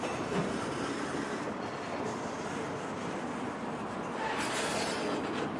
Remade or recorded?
recorded